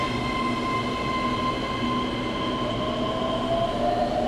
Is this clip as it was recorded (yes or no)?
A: yes